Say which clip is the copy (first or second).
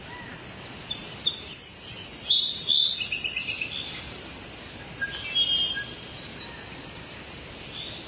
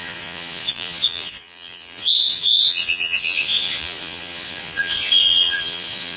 second